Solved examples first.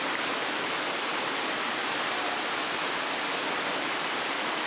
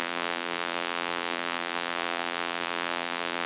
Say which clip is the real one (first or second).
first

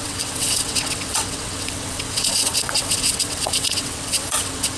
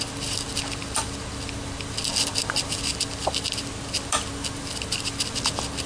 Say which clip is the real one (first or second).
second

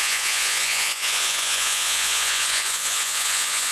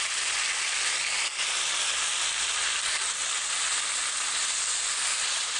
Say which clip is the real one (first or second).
second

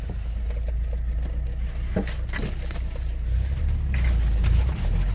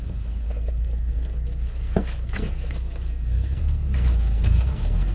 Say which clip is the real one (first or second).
first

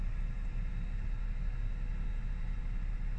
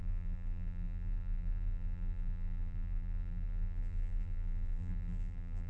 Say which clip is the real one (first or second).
first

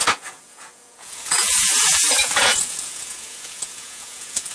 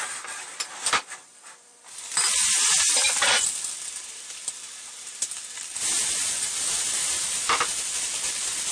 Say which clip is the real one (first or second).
second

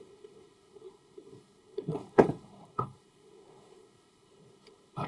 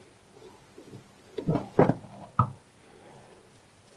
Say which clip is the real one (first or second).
second